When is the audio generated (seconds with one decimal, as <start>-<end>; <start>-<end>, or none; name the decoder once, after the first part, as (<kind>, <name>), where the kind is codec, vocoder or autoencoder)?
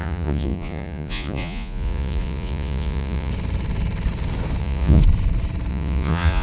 0.0-3.3 (vocoder, Vocos); 4.6-5.0; 5.7-6.4